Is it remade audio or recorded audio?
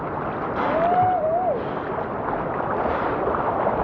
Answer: recorded